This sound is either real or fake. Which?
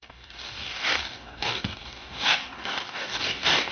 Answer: fake